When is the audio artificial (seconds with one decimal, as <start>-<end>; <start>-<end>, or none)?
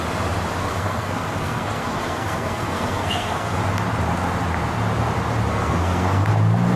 0.6-3.6; 5.5-6.3